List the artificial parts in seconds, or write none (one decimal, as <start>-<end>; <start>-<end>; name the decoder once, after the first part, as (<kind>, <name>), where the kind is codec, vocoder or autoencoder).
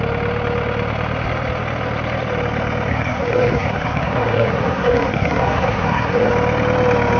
2.9-6.3 (codec, SNAC)